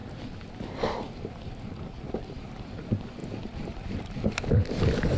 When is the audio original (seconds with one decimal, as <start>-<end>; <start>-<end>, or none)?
0.0-5.2